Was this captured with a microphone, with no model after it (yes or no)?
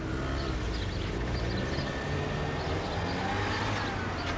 yes